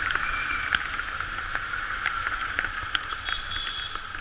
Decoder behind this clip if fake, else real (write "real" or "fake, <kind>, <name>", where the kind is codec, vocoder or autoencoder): real